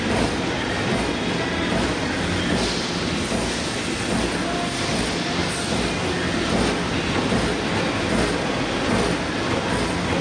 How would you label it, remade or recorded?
recorded